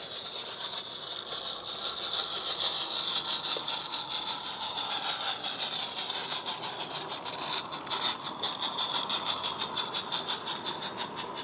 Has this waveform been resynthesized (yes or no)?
no